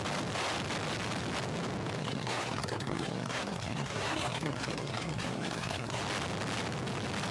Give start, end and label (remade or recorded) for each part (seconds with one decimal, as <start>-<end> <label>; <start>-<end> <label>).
0.0-2.0 recorded; 2.0-6.0 remade; 6.0-7.3 recorded